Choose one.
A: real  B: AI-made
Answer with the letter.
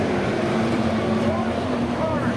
B